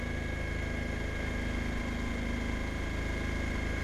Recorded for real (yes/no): yes